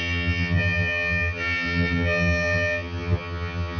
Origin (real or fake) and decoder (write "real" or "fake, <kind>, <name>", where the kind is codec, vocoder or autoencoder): fake, vocoder, HiFi-GAN